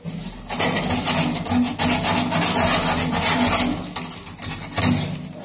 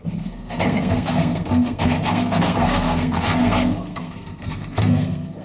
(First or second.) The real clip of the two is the first